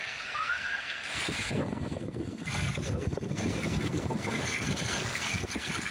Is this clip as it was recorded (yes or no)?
no